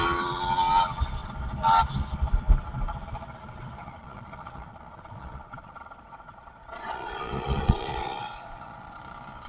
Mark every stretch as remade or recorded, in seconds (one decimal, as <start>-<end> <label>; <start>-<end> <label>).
0.0-3.8 recorded; 3.8-9.0 remade; 9.0-9.5 recorded

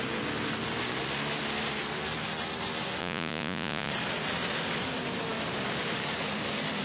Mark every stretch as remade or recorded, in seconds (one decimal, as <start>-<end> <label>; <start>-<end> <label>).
0.0-3.0 recorded; 3.0-3.9 remade; 3.9-6.8 recorded

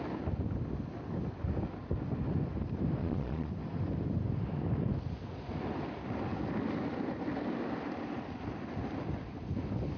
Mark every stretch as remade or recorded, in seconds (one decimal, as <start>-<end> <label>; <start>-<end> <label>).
0.0-3.0 recorded; 3.0-3.5 remade; 3.5-10.0 recorded

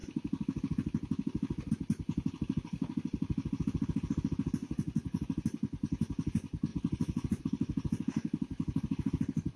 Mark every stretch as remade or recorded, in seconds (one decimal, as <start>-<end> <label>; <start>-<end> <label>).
0.0-4.6 recorded; 4.6-5.2 remade; 5.2-6.7 recorded; 6.7-7.4 remade; 7.4-9.6 recorded

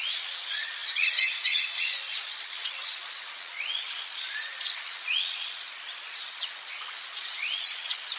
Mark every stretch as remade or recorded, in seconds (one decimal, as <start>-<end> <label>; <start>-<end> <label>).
0.0-8.2 remade

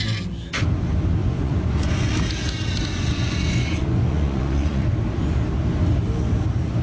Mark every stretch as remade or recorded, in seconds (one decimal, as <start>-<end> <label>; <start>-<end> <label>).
0.0-1.2 recorded; 1.2-2.1 remade; 2.1-2.9 recorded; 2.9-4.9 remade; 4.9-6.8 recorded

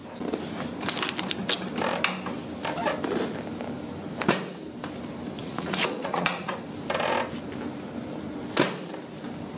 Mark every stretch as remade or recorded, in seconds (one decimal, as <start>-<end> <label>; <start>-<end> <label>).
0.0-5.4 recorded; 5.4-6.5 remade; 6.5-9.6 recorded